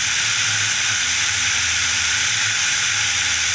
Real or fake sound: real